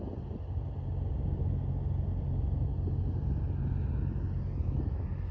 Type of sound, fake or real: real